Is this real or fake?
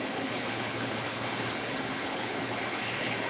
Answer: fake